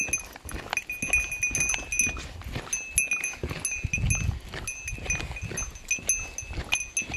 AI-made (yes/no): no